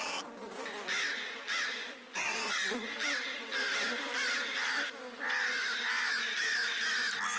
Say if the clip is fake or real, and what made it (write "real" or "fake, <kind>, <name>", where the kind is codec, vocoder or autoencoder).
real